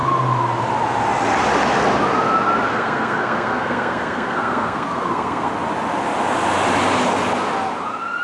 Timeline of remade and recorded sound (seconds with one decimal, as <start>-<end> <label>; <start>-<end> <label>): 0.0-2.7 recorded; 2.7-5.5 remade; 5.5-8.2 recorded